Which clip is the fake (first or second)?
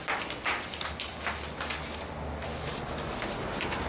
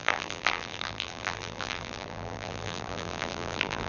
second